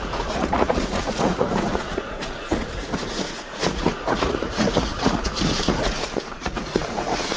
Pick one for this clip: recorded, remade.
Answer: remade